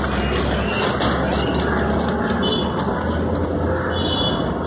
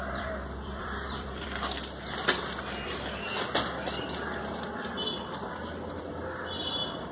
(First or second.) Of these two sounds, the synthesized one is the second